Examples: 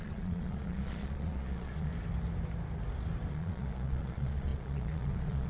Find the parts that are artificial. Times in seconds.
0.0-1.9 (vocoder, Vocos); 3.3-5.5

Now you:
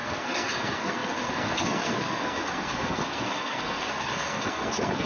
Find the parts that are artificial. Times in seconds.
0.0-5.1 (codec, SNAC)

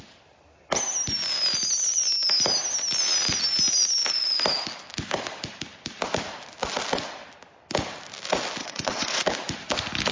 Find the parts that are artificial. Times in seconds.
8.6-9.2 (vocoder, WaveNeXt)

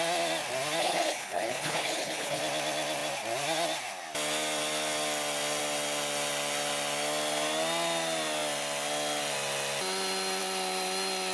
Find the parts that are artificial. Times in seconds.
0.8-2.4 (codec, HILCodec)